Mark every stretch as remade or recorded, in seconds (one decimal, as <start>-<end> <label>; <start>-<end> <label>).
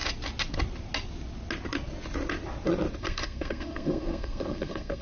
0.0-3.0 recorded; 3.0-5.0 remade